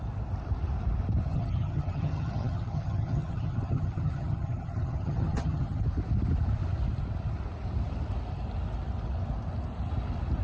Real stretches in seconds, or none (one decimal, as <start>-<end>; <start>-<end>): 0.0-1.3; 5.8-10.4